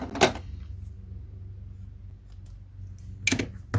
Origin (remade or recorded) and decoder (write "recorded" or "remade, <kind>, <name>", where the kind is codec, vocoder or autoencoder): recorded